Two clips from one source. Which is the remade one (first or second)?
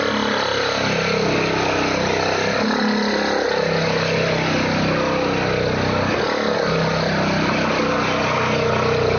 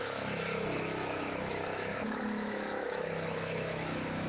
second